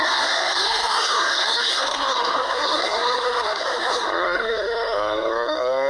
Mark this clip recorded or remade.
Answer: remade